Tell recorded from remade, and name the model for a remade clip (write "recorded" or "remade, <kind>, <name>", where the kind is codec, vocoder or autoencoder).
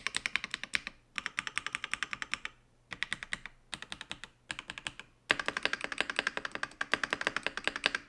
recorded